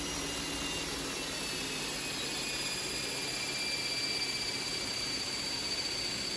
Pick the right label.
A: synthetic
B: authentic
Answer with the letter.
B